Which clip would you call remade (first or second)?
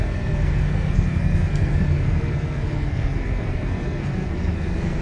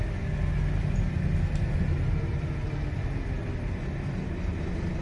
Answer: first